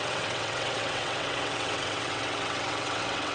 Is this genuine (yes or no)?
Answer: no